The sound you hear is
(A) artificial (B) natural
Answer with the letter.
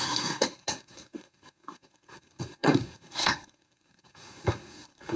A